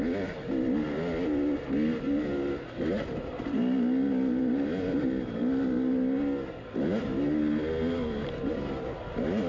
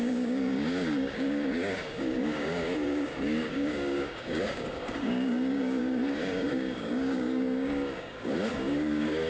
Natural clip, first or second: first